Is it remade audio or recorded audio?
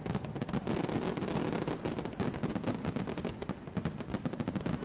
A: recorded